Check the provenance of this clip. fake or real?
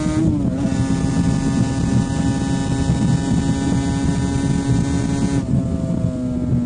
real